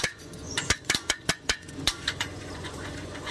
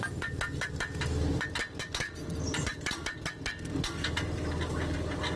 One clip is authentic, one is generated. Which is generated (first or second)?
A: first